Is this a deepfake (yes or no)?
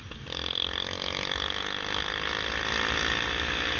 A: no